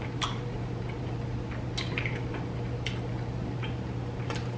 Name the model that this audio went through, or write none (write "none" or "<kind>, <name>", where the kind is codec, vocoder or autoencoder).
none